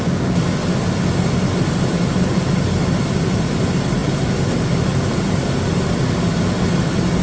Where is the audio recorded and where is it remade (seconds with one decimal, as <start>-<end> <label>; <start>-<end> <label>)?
0.0-7.2 recorded